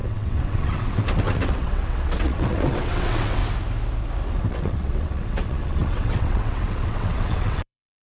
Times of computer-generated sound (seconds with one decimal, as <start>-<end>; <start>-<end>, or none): 0.0-3.4; 4.5-8.0